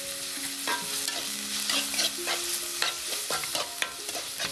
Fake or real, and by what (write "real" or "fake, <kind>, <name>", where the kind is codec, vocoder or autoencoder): real